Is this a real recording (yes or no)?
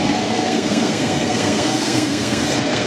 no